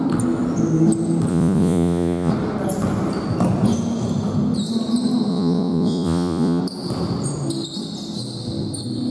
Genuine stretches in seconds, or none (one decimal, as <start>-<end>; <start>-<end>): 0.0-1.3; 2.3-5.3; 6.6-9.1